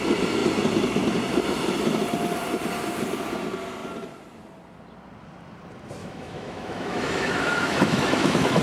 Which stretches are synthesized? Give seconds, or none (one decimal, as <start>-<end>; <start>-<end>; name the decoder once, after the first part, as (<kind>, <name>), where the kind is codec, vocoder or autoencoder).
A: 6.0-8.6 (autoencoder, DAC-VAE)